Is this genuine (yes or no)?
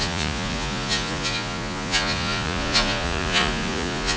no